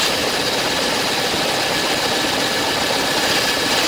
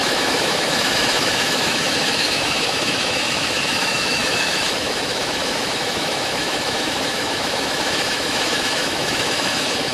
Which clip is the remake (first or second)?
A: second